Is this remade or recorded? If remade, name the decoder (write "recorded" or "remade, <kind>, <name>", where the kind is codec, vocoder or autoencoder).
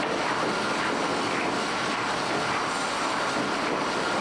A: recorded